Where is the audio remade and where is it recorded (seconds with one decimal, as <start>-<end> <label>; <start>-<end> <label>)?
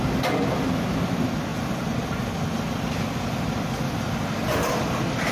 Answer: 0.0-5.3 recorded